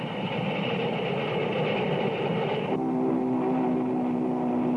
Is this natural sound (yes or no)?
yes